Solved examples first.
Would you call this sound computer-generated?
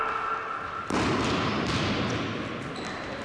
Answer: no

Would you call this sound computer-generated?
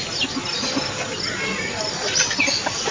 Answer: no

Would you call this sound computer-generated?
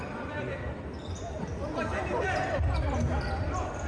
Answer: yes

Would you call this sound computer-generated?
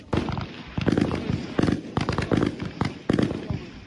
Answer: no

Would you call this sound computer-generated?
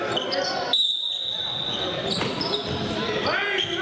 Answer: no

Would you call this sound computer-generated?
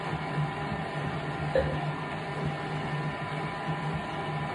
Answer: no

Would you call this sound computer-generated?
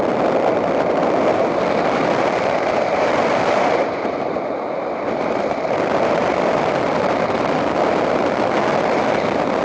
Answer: yes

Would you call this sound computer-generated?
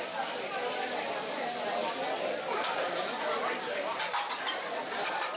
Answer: no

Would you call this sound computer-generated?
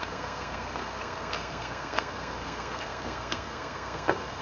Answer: yes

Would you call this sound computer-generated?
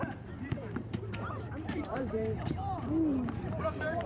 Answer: yes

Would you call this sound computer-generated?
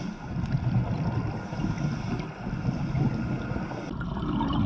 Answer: no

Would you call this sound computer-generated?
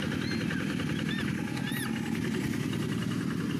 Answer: no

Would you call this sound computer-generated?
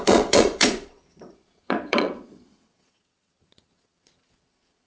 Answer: yes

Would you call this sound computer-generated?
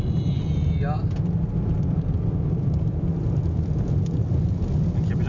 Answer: no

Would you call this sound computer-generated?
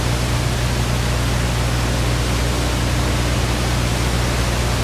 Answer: no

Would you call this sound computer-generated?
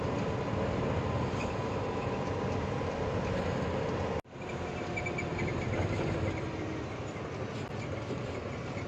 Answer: no